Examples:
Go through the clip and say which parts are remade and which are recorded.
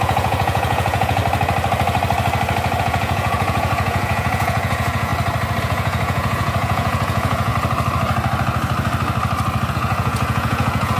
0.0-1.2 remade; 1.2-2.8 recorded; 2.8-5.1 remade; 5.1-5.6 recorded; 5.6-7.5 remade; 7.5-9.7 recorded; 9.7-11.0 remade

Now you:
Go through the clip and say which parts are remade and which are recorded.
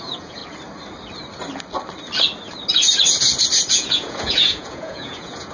0.0-0.4 remade; 0.4-3.7 recorded; 3.7-5.5 remade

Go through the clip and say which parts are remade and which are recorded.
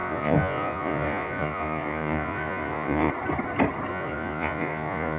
0.0-3.1 remade; 3.1-3.9 recorded; 3.9-5.2 remade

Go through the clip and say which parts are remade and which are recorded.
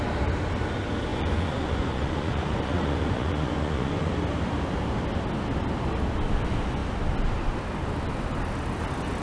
0.0-1.1 recorded; 1.1-4.1 remade; 4.1-9.2 recorded